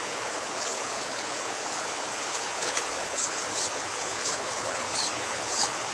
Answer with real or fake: fake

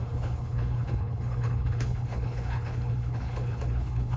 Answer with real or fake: fake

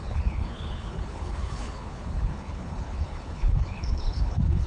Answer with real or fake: fake